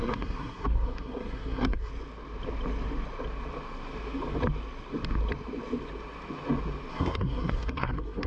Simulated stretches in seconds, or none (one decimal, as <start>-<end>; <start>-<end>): 0.0-1.9; 6.9-8.3